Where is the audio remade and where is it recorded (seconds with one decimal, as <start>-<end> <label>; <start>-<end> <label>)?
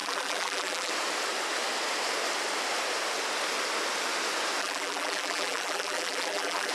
0.0-0.9 remade; 0.9-4.6 recorded; 4.6-6.7 remade